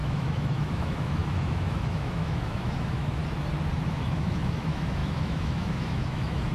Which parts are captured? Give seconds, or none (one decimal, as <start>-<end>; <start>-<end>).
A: 3.2-3.9